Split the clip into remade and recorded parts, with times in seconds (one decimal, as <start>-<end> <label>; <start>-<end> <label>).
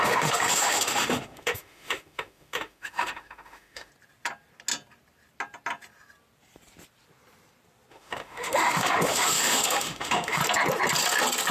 0.0-3.9 remade; 3.9-7.9 recorded; 7.9-10.4 remade; 10.4-11.5 recorded